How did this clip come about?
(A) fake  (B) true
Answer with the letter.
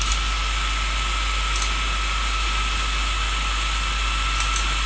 B